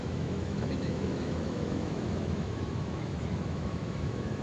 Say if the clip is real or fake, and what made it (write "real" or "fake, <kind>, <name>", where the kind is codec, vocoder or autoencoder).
fake, autoencoder, DAC-VAE